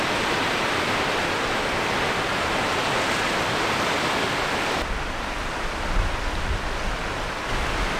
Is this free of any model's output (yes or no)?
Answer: yes